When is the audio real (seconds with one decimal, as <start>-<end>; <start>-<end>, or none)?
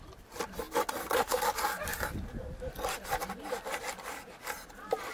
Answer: 0.0-1.0; 1.5-5.1